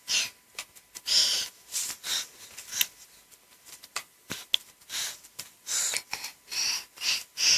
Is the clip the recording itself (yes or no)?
yes